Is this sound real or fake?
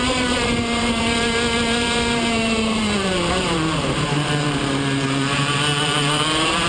fake